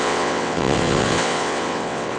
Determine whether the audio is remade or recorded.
remade